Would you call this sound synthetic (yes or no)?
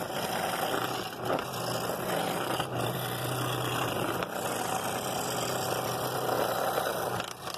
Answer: no